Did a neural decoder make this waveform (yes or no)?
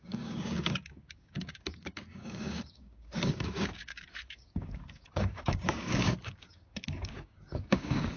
yes